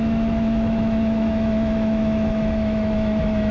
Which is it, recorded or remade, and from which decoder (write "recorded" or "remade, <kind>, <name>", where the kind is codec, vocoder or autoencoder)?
remade, autoencoder, DAC-VAE